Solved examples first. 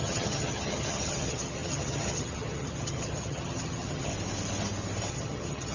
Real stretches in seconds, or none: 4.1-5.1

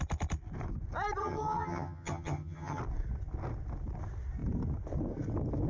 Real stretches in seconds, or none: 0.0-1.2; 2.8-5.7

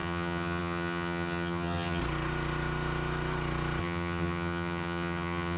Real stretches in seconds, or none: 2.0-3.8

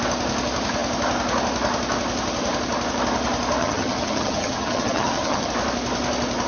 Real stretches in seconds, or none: 0.0-3.6; 5.5-6.5

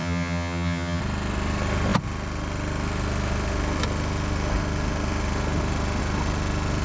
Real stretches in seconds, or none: 1.0-6.8

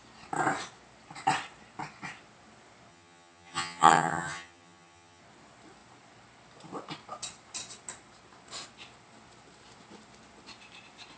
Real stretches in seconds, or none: 0.0-2.9; 5.2-11.2